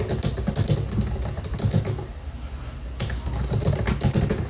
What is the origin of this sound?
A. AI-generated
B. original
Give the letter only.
B